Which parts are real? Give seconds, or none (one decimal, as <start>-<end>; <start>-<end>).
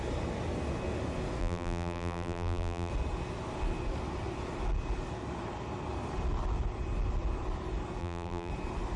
0.0-1.4; 2.9-8.0; 8.5-9.0